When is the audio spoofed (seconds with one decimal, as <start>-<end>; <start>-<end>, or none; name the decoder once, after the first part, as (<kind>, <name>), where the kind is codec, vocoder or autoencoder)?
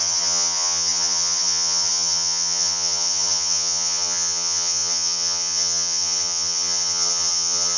0.0-7.8 (vocoder, HiFi-GAN)